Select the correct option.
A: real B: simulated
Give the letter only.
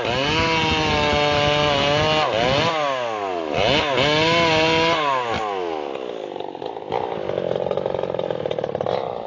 A